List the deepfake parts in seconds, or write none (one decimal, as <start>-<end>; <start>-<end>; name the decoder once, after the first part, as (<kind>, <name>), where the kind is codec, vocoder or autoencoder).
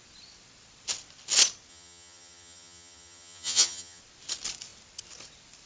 1.7-4.0 (vocoder, HiFi-GAN)